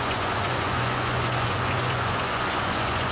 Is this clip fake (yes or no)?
yes